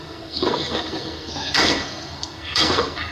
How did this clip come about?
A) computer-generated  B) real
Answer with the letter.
A